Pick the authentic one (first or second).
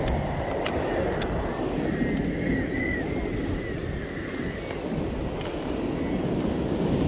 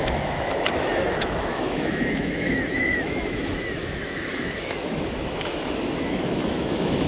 first